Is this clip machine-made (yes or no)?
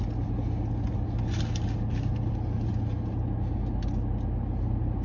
no